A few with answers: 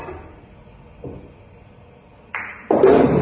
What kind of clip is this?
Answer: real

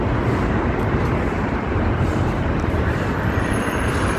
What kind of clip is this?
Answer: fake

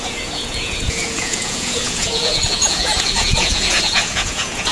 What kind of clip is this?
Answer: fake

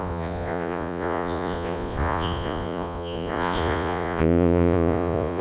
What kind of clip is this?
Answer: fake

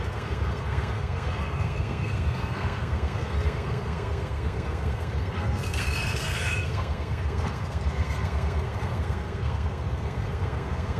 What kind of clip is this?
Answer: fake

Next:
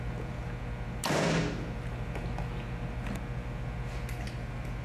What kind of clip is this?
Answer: real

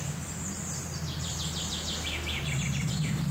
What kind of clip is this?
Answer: real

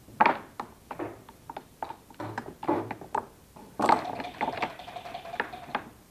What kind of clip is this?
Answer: fake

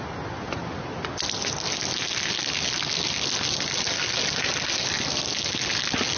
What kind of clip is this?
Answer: real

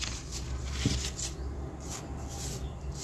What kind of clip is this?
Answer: real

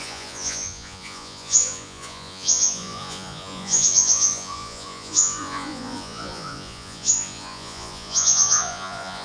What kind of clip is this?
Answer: fake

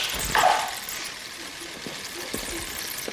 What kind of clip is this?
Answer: real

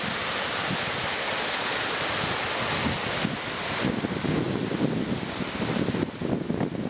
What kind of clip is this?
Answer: real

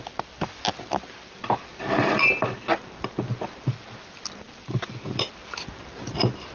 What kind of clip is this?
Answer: fake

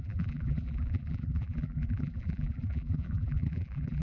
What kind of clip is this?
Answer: fake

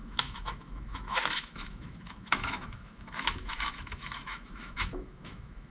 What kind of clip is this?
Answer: fake